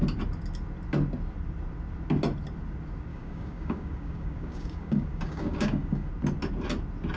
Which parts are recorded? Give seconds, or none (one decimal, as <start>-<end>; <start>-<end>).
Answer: 0.0-3.1; 6.1-7.2